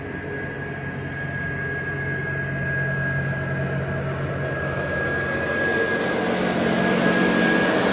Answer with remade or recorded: recorded